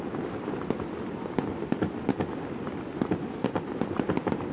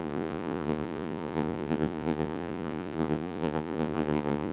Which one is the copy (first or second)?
second